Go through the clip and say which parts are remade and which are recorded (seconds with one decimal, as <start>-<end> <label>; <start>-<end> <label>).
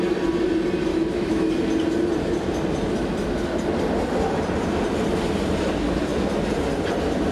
0.0-0.9 recorded; 0.9-1.5 remade; 1.5-7.3 recorded